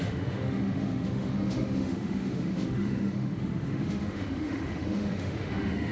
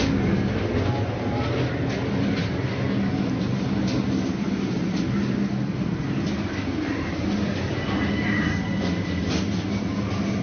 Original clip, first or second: second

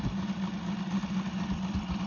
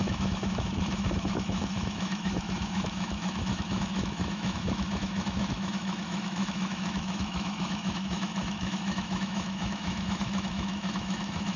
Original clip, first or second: first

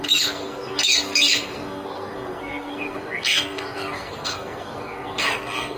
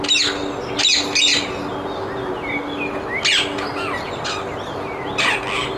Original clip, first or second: second